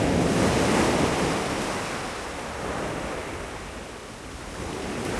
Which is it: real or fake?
real